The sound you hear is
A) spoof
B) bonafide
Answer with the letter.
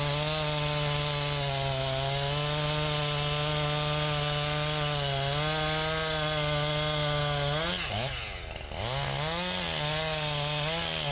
B